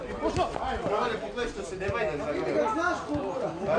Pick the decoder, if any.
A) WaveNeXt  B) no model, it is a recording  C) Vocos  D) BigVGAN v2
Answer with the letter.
B